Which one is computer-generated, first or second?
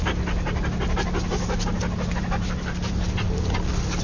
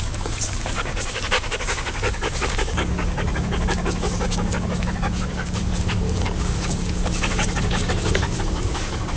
second